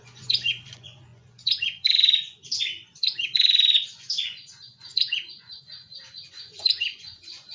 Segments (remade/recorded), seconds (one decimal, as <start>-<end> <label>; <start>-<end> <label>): 0.0-7.5 remade